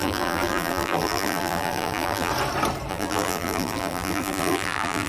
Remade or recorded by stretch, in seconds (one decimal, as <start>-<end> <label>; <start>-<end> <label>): 0.0-2.3 remade; 2.3-2.9 recorded; 2.9-5.1 remade